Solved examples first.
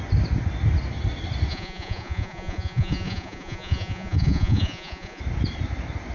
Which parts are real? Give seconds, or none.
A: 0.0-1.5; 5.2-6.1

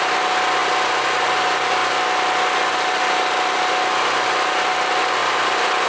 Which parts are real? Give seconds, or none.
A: 0.0-5.9

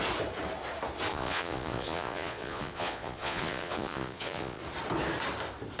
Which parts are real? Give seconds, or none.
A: 0.0-1.1; 4.6-5.8